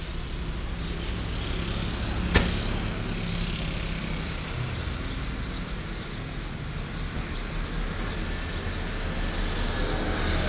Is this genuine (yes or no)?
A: yes